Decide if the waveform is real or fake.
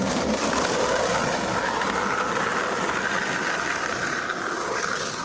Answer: real